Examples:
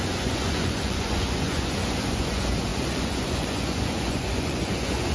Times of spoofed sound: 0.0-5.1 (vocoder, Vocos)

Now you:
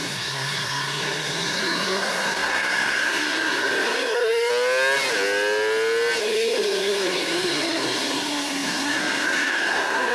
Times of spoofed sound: 0.0-4.5 (codec, SNAC); 6.2-10.1

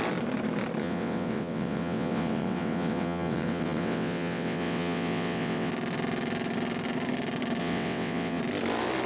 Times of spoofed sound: 0.8-5.7 (vocoder, WaveNeXt); 7.6-8.4

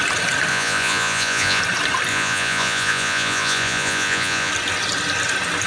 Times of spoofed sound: 0.5-1.6 (vocoder, Vocos); 2.1-4.5